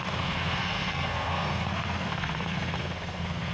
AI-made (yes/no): yes